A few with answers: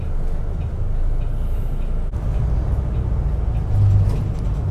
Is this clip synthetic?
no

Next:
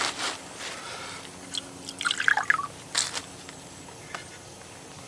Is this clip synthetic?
no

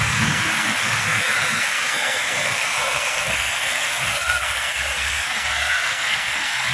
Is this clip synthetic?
yes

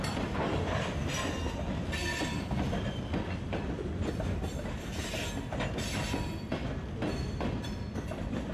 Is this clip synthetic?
no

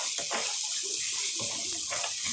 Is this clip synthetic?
no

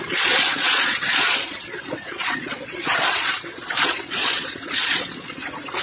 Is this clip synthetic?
yes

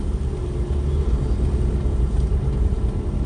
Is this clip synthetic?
no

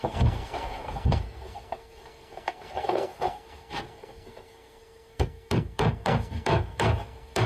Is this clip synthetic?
yes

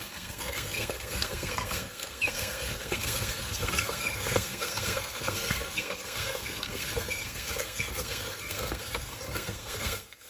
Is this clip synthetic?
yes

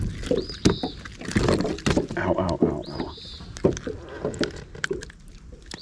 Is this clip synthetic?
no